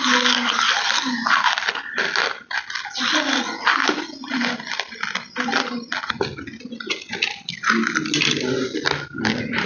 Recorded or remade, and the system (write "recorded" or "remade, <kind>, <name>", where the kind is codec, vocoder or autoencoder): recorded